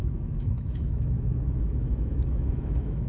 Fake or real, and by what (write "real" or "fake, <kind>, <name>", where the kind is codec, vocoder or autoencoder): fake, autoencoder, DAC-VAE